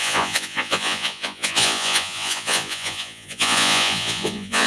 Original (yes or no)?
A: no